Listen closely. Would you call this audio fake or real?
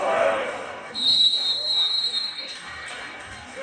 fake